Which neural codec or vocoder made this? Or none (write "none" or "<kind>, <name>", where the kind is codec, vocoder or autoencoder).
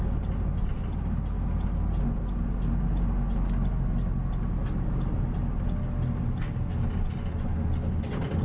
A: none